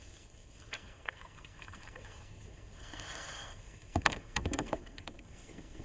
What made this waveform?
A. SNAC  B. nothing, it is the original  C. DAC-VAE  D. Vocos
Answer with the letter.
A